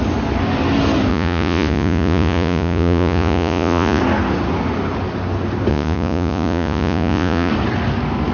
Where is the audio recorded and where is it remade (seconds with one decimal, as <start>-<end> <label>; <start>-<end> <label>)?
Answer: 0.0-1.1 recorded; 1.1-4.0 remade; 4.0-5.7 recorded; 5.7-7.5 remade; 7.5-8.3 recorded